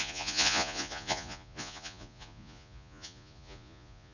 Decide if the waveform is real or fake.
fake